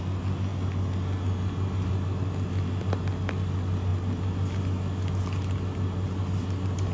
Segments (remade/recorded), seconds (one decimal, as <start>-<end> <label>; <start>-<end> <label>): 0.0-6.9 recorded